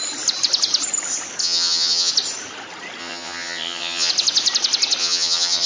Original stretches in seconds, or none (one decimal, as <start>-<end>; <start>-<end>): 0.0-1.4; 2.1-3.0; 4.1-5.0